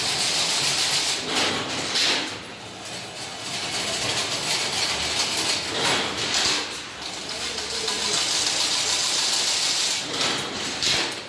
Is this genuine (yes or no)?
yes